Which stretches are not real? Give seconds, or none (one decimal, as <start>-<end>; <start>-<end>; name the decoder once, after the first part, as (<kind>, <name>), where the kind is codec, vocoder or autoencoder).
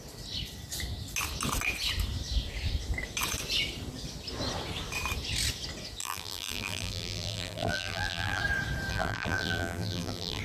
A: 6.0-8.4 (vocoder, BigVGAN v2); 8.9-10.4